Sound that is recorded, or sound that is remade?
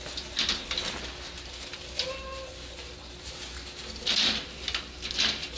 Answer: recorded